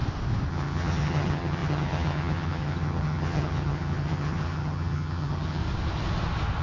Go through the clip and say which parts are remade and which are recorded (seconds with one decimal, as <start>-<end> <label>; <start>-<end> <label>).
0.0-0.5 recorded; 0.5-5.6 remade; 5.6-6.6 recorded